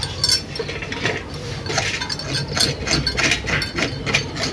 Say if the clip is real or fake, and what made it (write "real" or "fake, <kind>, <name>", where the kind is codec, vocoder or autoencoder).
real